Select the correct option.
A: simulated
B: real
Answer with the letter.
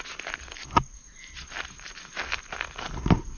B